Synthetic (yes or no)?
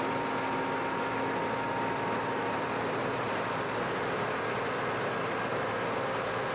no